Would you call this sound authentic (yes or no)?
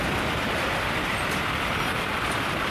yes